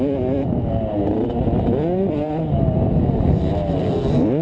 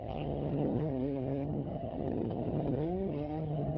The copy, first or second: second